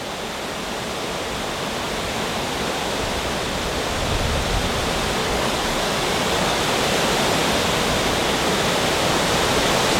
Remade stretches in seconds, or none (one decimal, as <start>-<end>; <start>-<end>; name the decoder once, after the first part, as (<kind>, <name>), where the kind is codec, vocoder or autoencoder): 5.2-6.6 (codec, DAC)